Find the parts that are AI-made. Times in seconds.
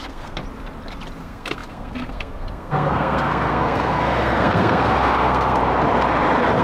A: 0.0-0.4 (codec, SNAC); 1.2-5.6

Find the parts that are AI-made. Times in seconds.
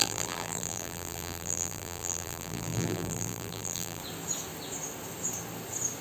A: 0.0-4.0 (vocoder, BigVGAN v2)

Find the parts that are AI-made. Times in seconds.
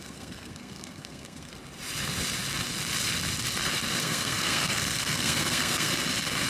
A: 0.0-1.5 (codec, SNAC); 4.0-5.9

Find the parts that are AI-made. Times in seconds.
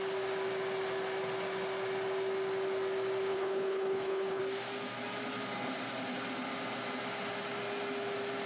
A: 3.3-4.4 (codec, HILCodec)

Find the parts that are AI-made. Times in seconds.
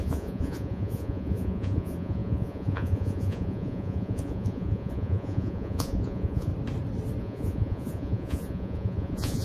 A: 0.0-6.5 (vocoder, Vocos); 7.2-9.4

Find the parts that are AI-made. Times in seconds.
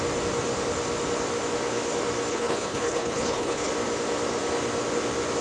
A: 2.3-3.7 (codec, HILCodec)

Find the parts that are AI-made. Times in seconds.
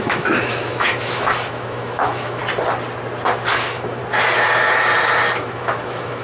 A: 0.0-2.4 (autoencoder, DAC-VAE); 3.5-4.0; 5.4-6.2